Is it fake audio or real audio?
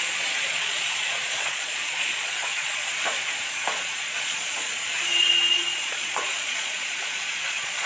fake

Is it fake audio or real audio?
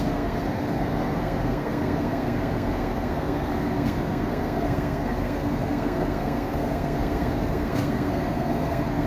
fake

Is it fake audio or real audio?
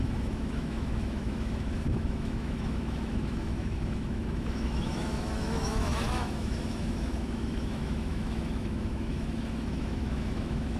fake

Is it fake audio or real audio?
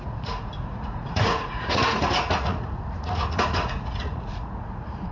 fake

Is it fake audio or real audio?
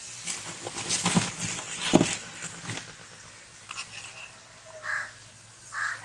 real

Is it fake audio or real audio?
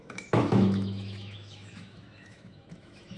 fake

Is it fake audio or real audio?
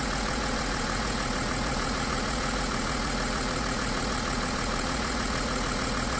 fake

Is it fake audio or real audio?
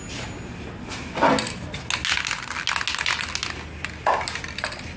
real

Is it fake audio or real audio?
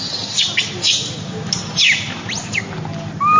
real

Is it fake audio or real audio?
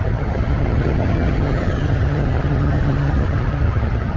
fake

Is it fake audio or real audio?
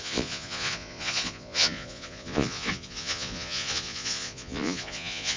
fake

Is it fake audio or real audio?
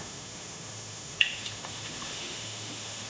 fake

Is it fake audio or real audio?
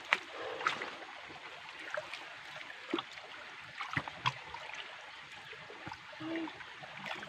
real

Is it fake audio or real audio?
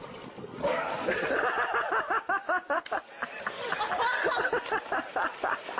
real